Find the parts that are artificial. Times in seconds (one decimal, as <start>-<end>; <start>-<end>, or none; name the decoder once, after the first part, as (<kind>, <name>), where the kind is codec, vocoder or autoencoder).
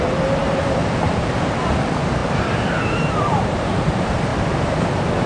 0.0-4.3 (vocoder, BigVGAN v2)